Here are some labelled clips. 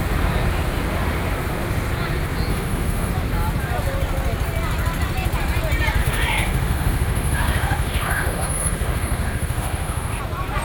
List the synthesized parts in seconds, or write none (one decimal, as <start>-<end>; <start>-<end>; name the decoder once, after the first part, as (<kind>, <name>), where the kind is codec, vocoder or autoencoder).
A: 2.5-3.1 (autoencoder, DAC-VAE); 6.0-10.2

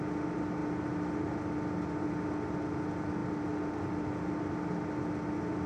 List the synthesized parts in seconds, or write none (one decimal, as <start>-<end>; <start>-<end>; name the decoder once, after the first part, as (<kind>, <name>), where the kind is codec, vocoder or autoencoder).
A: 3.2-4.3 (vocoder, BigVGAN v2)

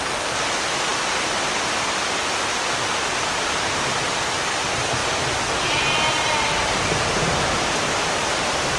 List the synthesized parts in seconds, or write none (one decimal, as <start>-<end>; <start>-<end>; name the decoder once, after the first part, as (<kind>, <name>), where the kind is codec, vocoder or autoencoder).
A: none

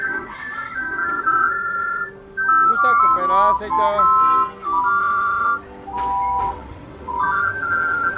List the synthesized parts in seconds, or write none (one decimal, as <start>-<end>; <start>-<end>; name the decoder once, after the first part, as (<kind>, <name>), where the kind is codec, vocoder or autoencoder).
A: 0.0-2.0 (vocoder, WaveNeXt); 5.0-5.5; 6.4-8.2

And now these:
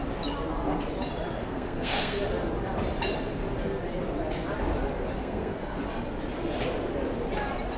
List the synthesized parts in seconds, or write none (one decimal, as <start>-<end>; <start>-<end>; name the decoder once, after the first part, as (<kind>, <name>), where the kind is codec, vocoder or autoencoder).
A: 1.4-2.2 (codec, SNAC); 5.2-5.8

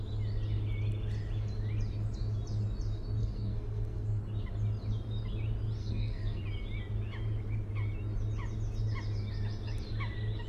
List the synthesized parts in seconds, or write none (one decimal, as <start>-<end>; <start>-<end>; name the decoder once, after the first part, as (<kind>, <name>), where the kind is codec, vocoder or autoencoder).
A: 3.2-4.2 (codec, SNAC); 5.8-6.4